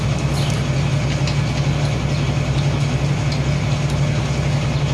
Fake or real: real